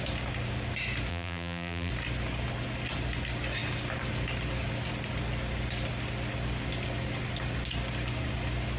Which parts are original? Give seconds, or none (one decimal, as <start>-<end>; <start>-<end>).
0.0-1.1; 1.9-8.8